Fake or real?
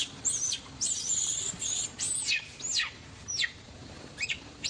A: fake